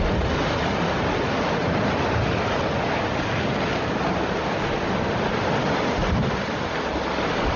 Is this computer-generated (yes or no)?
no